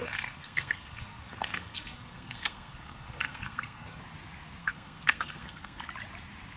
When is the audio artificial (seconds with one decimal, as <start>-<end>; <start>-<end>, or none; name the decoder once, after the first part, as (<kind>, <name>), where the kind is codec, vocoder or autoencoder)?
0.0-4.0 (codec, SNAC); 4.6-5.8